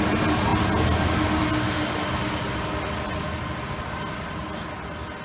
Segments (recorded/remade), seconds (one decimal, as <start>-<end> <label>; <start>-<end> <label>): 0.0-5.2 recorded